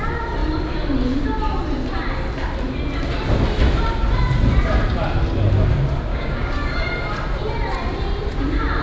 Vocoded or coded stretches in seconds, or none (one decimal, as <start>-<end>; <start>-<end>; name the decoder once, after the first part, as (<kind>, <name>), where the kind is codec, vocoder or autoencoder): 6.1-6.9 (codec, DAC)